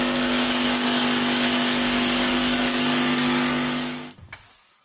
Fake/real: fake